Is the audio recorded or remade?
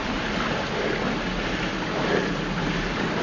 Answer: recorded